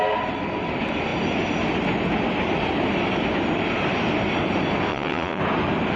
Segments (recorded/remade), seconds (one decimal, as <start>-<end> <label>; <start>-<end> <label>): 0.0-4.9 recorded; 4.9-5.4 remade; 5.4-6.0 recorded